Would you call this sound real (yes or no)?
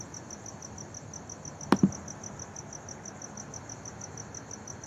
yes